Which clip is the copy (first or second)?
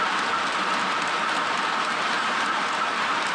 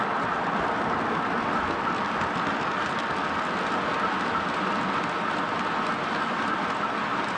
first